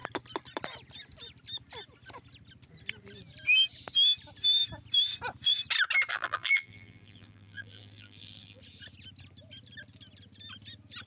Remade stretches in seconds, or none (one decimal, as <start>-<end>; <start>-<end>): 6.1-8.6